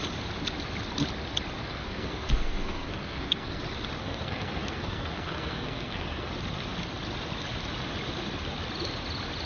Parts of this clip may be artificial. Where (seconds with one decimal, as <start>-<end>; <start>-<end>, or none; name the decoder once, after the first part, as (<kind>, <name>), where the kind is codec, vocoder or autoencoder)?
1.6-3.6 (codec, SNAC); 4.0-6.3